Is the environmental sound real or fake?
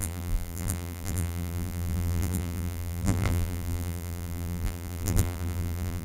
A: fake